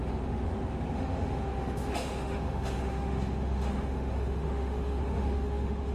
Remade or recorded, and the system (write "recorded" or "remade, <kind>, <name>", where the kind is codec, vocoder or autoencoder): remade, autoencoder, DAC-VAE